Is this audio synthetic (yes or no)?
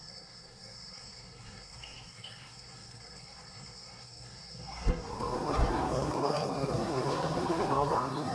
yes